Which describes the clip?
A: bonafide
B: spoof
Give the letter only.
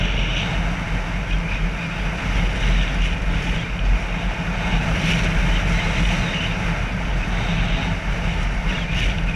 A